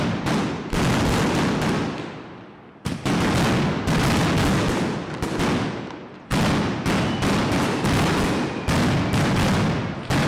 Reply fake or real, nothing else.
real